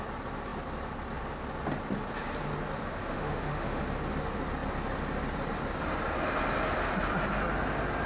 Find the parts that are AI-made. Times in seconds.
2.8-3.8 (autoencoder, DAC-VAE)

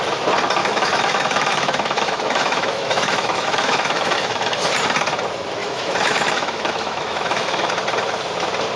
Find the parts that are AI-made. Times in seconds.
0.6-4.7 (autoencoder, DAC-VAE); 5.6-7.7

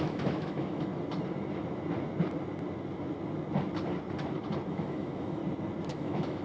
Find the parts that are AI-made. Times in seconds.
0.0-0.9 (autoencoder, DAC-VAE); 4.7-5.4; 5.9-6.4

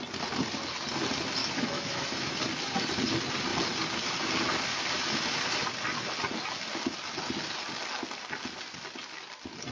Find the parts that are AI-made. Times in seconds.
1.4-2.4 (autoencoder, DAC-VAE)

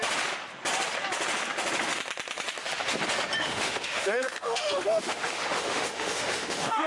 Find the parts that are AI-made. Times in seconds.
3.4-6.9 (autoencoder, DAC-VAE)

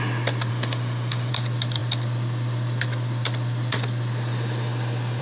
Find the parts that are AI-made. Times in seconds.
0.5-1.3 (autoencoder, DAC-VAE)

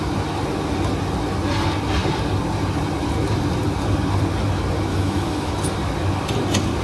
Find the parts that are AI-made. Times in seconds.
4.9-5.5 (autoencoder, DAC-VAE)

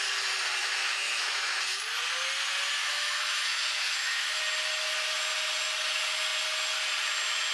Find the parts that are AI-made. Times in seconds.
0.6-1.6 (autoencoder, DAC-VAE); 2.8-4.4